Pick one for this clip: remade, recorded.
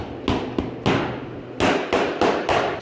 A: recorded